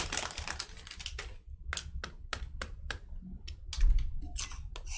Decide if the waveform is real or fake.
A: real